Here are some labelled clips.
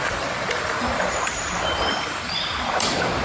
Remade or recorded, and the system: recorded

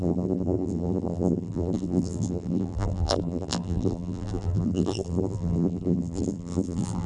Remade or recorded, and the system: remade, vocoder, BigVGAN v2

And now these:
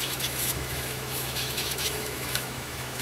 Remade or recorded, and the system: remade, autoencoder, DAC-VAE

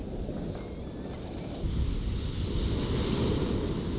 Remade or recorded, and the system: recorded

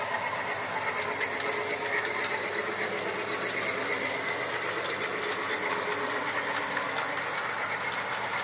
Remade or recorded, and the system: recorded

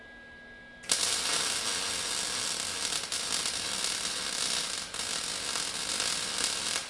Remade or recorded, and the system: recorded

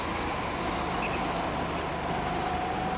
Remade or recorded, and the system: recorded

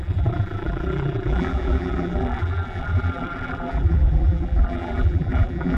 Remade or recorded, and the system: remade, vocoder, BigVGAN v2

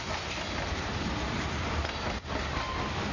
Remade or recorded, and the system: recorded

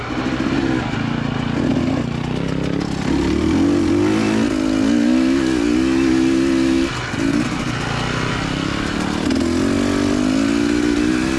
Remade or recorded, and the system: recorded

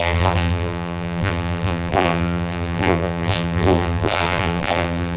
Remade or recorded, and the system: remade, vocoder, BigVGAN v2